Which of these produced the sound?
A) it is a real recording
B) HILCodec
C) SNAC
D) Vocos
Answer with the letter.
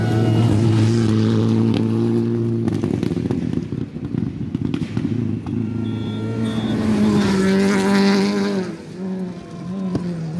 A